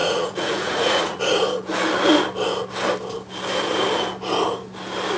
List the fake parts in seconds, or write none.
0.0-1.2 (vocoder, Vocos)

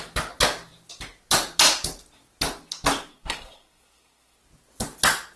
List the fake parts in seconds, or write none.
3.1-4.4 (codec, SNAC)

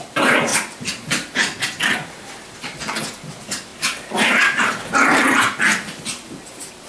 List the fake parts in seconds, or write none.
none

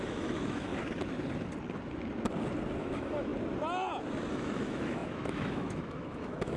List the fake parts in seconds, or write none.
0.0-0.7 (autoencoder, DAC-VAE); 2.8-3.3; 4.3-6.6

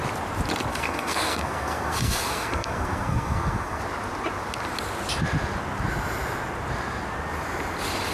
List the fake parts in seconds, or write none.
0.7-3.8 (codec, SNAC)